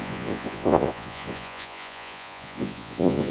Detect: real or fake fake